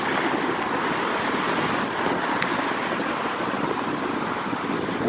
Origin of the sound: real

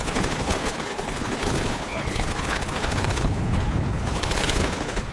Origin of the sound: fake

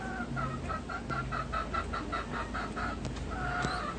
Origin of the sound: real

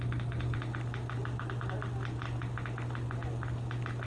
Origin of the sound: real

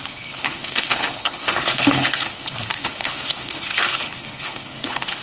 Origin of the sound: fake